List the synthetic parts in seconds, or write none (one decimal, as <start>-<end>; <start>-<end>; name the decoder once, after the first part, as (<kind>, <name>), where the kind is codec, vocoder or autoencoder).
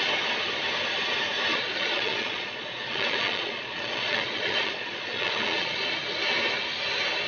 1.5-5.9 (vocoder, Vocos)